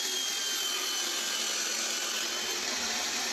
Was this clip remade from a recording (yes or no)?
no